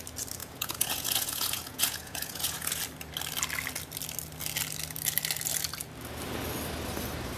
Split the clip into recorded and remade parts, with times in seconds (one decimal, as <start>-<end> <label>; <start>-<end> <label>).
0.0-0.4 recorded; 0.4-2.8 remade; 2.8-7.4 recorded